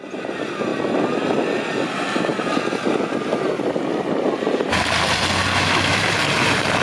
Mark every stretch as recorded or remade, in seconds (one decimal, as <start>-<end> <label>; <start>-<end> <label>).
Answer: 0.0-5.5 recorded; 5.5-6.0 remade; 6.0-6.8 recorded

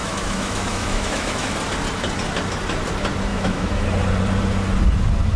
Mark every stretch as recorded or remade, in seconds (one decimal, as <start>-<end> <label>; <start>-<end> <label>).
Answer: 0.0-1.5 remade; 1.5-3.3 recorded; 3.3-3.9 remade; 3.9-5.4 recorded

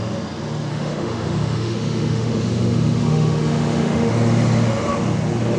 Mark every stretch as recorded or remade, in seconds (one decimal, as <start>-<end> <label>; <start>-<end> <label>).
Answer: 0.0-0.7 recorded; 0.7-4.1 remade; 4.1-5.6 recorded